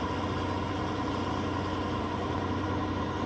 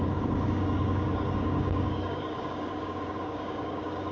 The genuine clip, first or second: first